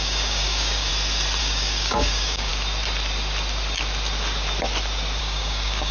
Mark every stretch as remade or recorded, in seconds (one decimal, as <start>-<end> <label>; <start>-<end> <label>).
0.0-0.9 remade; 0.9-1.4 recorded; 1.4-2.5 remade; 2.5-5.2 recorded; 5.2-5.9 remade